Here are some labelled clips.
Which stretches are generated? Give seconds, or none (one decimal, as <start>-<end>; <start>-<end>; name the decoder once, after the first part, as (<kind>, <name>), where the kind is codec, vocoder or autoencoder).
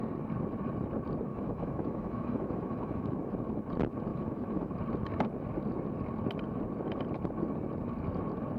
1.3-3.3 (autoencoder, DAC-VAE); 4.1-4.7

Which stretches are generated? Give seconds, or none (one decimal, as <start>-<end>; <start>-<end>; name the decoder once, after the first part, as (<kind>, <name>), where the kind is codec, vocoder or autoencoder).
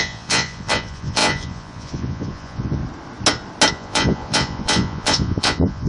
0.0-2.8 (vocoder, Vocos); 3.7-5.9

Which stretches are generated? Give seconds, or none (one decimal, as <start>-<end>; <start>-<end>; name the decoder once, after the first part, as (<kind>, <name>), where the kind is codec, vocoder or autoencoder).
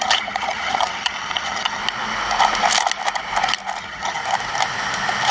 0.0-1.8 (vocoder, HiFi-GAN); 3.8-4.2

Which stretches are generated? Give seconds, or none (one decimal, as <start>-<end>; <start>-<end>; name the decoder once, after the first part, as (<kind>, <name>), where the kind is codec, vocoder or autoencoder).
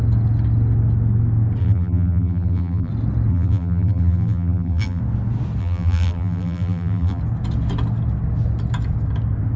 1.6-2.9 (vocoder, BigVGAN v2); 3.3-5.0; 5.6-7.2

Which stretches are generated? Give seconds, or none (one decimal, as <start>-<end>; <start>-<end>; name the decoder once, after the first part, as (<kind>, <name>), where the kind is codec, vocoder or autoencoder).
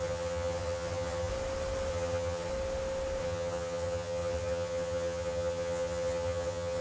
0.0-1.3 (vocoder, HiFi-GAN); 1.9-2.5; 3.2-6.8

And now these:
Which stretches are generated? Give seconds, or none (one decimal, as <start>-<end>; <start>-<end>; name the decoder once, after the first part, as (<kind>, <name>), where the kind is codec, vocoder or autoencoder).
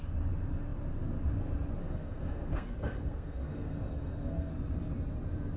1.8-4.5 (codec, SNAC)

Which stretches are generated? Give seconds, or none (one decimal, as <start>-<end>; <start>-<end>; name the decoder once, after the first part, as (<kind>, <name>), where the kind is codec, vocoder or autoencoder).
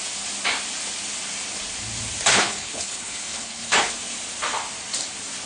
2.3-3.9 (codec, HILCodec)